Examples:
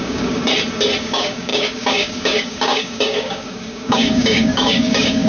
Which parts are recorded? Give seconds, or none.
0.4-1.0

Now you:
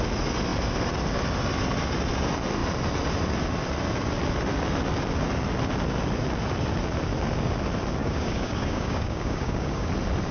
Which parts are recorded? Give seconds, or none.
0.0-8.0; 9.9-10.3